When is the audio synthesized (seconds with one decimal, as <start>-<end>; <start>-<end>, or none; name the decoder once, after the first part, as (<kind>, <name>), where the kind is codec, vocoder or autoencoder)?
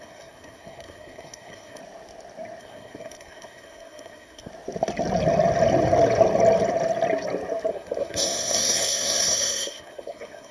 0.0-1.8 (codec, SNAC); 2.6-4.5; 7.7-10.5